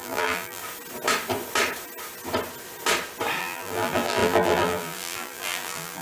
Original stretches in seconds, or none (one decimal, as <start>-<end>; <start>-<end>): 0.6-3.4